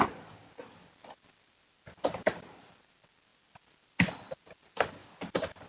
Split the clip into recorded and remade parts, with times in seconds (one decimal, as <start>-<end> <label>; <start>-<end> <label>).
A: 0.0-5.7 recorded